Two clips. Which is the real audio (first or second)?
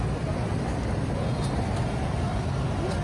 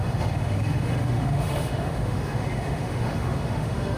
first